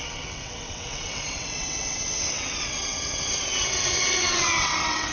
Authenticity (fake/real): fake